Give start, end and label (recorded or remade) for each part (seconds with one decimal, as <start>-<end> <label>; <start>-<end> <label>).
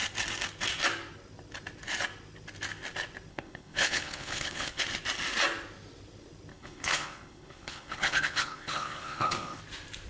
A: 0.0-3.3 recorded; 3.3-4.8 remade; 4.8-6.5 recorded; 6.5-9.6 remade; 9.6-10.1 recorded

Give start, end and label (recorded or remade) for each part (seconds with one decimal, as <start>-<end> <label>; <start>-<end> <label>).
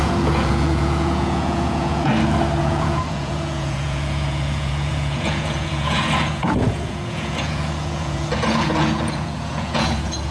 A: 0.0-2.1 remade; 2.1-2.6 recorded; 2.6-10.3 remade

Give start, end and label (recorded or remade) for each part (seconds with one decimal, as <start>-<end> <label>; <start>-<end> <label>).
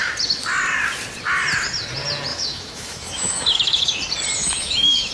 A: 0.0-2.3 recorded; 2.3-4.0 remade; 4.0-4.4 recorded; 4.4-5.1 remade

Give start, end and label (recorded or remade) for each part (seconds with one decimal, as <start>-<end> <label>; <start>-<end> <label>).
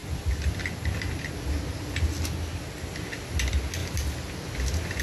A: 0.0-5.0 recorded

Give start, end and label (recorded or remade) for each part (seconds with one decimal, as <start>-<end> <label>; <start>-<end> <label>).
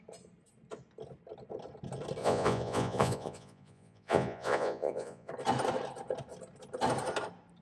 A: 0.0-2.2 recorded; 2.2-5.3 remade; 5.3-7.6 recorded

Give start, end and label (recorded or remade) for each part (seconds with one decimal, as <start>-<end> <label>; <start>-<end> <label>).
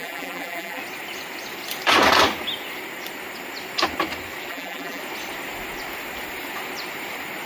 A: 0.0-0.8 remade; 0.8-4.5 recorded; 4.5-5.0 remade; 5.0-7.5 recorded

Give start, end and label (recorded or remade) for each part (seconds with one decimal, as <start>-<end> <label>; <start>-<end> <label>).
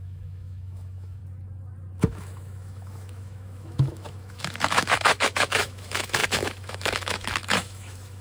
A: 0.0-1.2 remade; 1.2-2.0 recorded; 2.0-8.2 remade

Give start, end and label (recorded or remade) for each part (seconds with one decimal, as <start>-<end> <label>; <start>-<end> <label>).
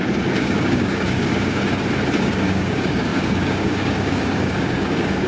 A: 0.0-1.7 remade; 1.7-2.2 recorded; 2.2-5.3 remade